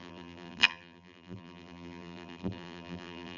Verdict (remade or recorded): remade